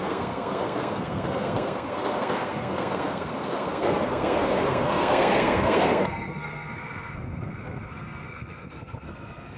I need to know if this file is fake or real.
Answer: fake